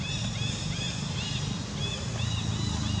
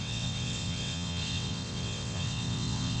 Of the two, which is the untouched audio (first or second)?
first